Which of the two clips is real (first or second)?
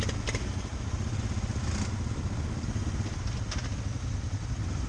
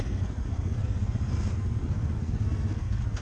first